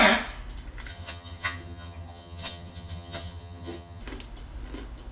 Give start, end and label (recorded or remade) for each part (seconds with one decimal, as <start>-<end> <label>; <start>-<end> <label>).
0.0-0.9 recorded; 0.9-4.0 remade; 4.0-5.1 recorded